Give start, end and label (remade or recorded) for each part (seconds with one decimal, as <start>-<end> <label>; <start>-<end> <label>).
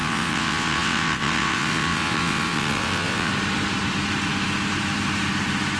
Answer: 0.0-3.3 remade; 3.3-5.8 recorded